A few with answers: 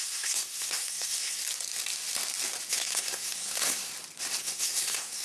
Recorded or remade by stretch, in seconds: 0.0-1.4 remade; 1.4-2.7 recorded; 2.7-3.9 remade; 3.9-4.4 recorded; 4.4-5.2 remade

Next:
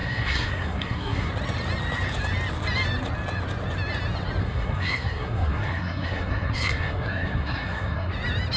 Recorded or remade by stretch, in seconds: 0.0-1.3 remade; 1.3-4.4 recorded; 4.4-8.1 remade; 8.1-8.6 recorded

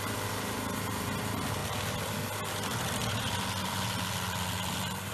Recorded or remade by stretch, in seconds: 0.0-5.1 recorded

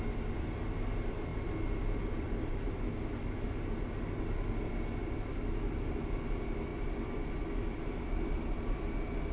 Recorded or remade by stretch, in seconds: 0.0-1.3 recorded; 1.3-2.0 remade; 2.0-5.0 recorded; 5.0-5.7 remade; 5.7-6.7 recorded; 6.7-8.8 remade; 8.8-9.3 recorded

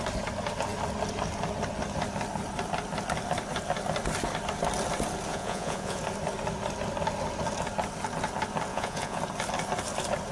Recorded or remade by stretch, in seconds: 0.0-5.3 recorded; 5.3-6.0 remade; 6.0-8.7 recorded; 8.7-9.2 remade; 9.2-10.3 recorded

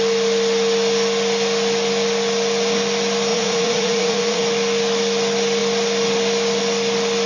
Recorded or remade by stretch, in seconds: 0.0-3.3 recorded; 3.3-4.4 remade; 4.4-7.3 recorded

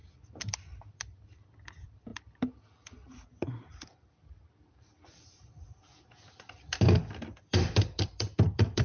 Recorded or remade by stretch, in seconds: 0.0-1.0 recorded; 1.0-2.1 remade; 2.1-7.4 recorded; 7.4-8.8 remade